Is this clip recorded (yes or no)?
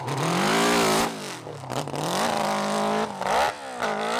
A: yes